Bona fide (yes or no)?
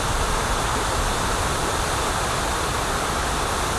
yes